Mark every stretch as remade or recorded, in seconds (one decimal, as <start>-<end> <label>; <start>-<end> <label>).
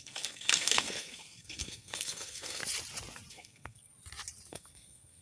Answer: 0.0-2.6 remade; 2.6-3.3 recorded; 3.3-3.9 remade; 3.9-4.5 recorded; 4.5-5.2 remade